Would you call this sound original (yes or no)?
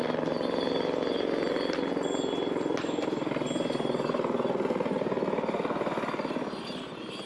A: yes